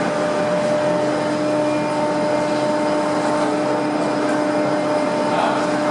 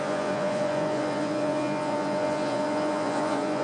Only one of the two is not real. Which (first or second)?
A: second